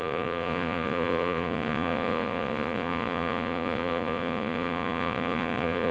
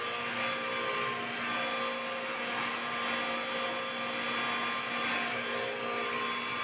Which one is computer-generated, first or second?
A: first